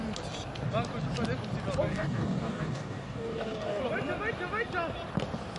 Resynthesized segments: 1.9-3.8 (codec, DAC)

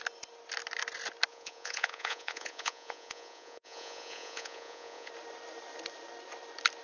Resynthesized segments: 1.3-5.1 (vocoder, Vocos)

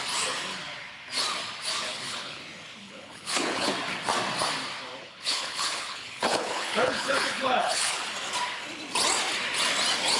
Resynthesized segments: 1.9-2.4 (codec, HILCodec); 2.8-3.7; 5.0-8.0

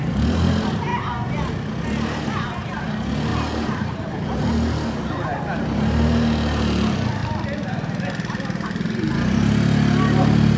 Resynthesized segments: none

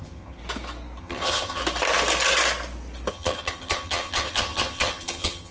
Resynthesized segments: 0.0-0.4 (vocoder, HiFi-GAN); 1.0-1.6; 3.1-5.5

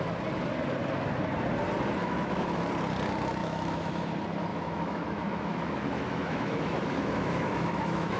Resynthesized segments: 2.0-2.6 (autoencoder, DAC-VAE); 3.4-4.1; 4.5-8.2